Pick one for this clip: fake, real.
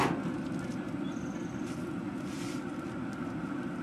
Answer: real